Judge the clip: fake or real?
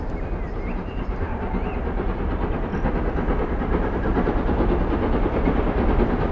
real